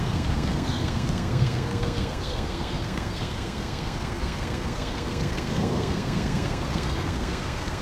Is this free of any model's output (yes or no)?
no